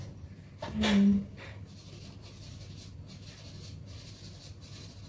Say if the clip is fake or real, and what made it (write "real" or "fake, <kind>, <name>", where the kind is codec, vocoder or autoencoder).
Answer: real